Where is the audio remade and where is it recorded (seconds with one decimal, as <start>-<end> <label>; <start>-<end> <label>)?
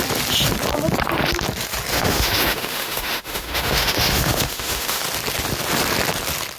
0.0-1.9 recorded; 1.9-5.0 remade; 5.0-6.6 recorded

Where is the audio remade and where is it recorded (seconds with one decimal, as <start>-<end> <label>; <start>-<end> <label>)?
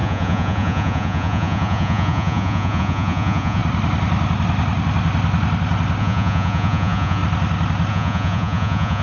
0.0-3.6 remade; 3.6-6.0 recorded; 6.0-7.2 remade; 7.2-7.9 recorded; 7.9-9.0 remade